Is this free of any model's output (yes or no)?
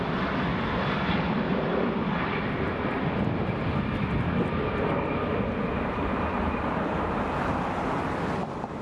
yes